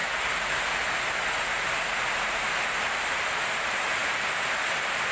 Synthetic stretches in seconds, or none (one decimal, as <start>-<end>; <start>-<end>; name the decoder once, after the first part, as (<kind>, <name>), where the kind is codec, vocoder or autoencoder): none